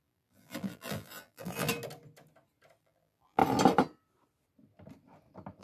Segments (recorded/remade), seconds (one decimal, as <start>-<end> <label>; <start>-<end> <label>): 0.0-1.7 remade; 1.7-2.8 recorded; 2.8-3.4 remade; 3.4-5.6 recorded